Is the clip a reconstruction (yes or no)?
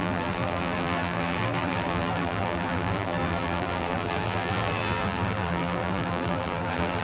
yes